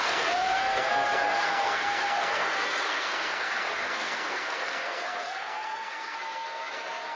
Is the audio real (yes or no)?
no